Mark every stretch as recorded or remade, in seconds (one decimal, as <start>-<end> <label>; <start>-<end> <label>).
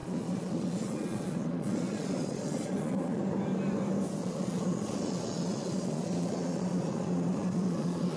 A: 0.0-3.2 remade; 3.2-4.2 recorded; 4.2-8.2 remade